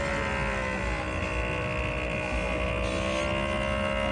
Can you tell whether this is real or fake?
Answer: real